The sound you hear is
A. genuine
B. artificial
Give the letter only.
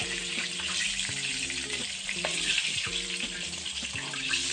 B